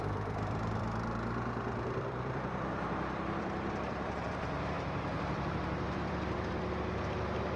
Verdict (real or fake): fake